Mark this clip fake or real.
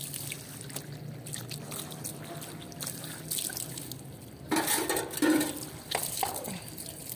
real